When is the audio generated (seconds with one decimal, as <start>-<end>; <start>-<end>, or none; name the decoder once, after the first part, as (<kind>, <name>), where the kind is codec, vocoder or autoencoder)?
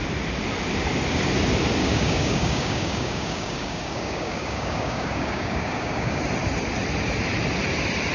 1.8-6.2 (codec, DAC)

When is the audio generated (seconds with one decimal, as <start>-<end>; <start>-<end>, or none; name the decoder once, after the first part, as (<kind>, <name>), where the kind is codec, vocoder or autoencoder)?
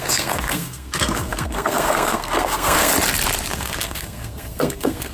0.0-2.9 (codec, SNAC); 3.5-5.1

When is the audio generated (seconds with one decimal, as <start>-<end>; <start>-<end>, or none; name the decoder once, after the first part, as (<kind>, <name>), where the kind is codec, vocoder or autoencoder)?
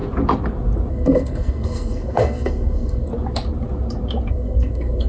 0.9-3.1 (codec, SNAC); 4.3-5.1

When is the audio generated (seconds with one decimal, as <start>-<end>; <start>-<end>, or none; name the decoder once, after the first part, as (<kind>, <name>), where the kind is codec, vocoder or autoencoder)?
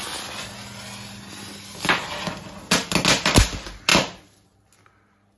3.9-4.6 (vocoder, BigVGAN v2)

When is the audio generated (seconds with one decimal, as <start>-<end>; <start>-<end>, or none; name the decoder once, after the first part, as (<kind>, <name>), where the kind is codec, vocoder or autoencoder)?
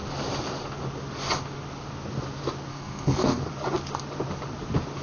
2.7-3.4 (codec, SNAC)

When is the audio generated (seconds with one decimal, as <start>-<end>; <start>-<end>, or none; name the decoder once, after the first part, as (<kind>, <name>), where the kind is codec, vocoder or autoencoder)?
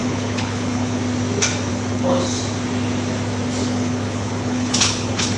0.0-1.0 (codec, HILCodec); 1.7-2.4; 3.6-5.4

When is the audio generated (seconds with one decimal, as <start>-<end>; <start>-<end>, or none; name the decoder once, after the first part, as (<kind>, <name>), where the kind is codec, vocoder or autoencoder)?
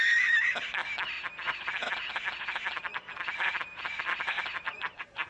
0.0-0.8 (vocoder, BigVGAN v2); 4.0-5.3